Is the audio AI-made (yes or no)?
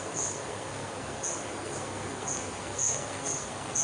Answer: yes